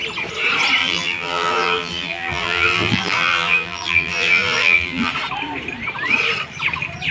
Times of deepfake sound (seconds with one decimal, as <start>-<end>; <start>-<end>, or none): 0.8-5.1